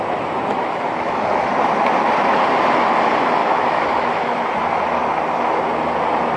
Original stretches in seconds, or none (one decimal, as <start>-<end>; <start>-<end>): 0.0-0.5; 1.5-3.4; 4.4-6.4